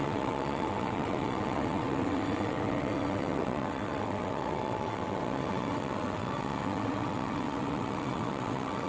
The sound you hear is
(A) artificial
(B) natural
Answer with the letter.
A